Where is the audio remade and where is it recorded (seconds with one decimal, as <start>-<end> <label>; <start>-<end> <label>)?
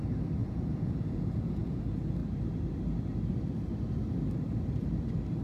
0.0-0.4 recorded; 0.4-1.8 remade; 1.8-5.4 recorded